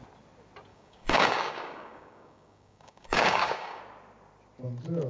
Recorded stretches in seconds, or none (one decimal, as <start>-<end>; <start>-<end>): 0.0-0.7; 3.8-5.1